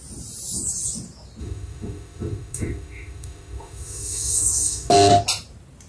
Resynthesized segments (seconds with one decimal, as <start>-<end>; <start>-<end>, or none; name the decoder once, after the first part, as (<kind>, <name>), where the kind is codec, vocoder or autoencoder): 1.4-4.9 (autoencoder, DAC-VAE)